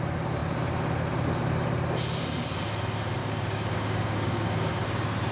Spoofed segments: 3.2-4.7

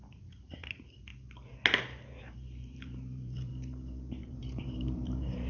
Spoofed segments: 0.0-1.1; 2.2-3.5; 4.2-5.5

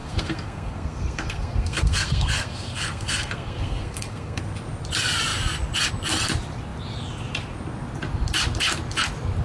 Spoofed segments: 0.0-4.4

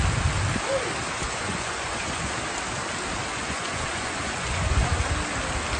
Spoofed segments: 1.2-2.3; 3.3-4.9

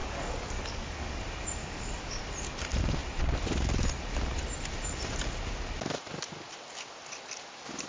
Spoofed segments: 0.0-1.2; 1.6-2.2

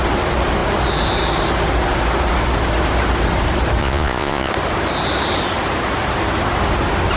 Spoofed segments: 3.8-4.5

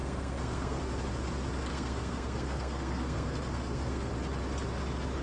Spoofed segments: 0.0-0.8; 1.7-4.1